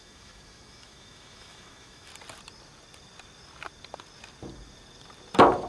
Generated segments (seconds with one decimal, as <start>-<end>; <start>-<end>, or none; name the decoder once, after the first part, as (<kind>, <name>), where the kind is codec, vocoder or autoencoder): 0.0-2.1 (autoencoder, DAC-VAE)